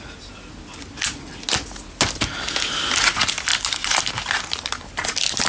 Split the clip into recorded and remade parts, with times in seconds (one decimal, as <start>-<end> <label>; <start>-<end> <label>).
0.0-5.5 recorded